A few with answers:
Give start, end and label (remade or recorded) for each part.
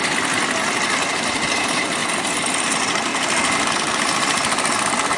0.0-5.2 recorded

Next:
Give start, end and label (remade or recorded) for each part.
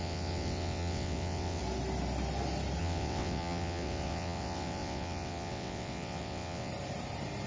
0.0-1.6 remade; 1.6-2.8 recorded; 2.8-6.7 remade; 6.7-7.5 recorded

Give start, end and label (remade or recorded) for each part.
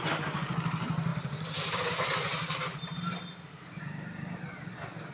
0.0-1.1 recorded; 1.1-3.8 remade; 3.8-5.1 recorded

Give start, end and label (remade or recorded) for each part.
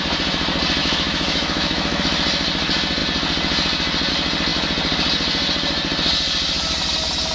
0.0-0.8 recorded; 0.8-2.0 remade; 2.0-7.3 recorded